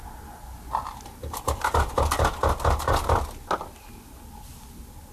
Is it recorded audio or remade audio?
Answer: recorded